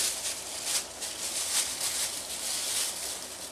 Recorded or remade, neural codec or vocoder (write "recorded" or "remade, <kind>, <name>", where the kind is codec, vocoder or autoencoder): recorded